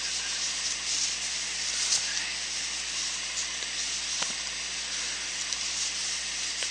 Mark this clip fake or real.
real